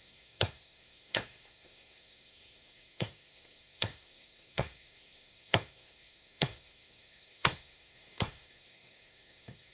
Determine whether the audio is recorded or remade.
remade